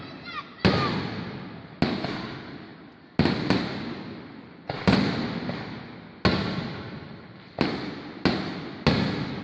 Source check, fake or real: real